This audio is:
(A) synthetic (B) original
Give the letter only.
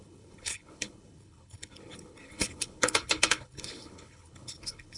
A